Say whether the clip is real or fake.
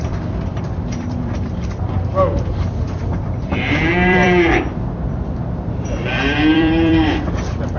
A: fake